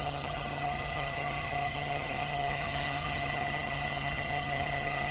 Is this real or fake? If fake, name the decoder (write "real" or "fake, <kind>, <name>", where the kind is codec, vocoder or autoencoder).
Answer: fake, vocoder, HiFi-GAN